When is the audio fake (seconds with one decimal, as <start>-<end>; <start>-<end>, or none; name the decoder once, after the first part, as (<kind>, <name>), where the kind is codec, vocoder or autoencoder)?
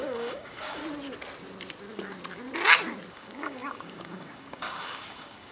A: 0.0-0.8 (codec, DAC); 3.1-5.5